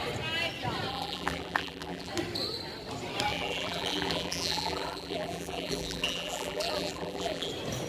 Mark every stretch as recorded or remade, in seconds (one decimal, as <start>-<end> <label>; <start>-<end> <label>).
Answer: 0.0-0.9 recorded; 0.9-2.1 remade; 2.1-3.3 recorded; 3.3-7.5 remade; 7.5-7.9 recorded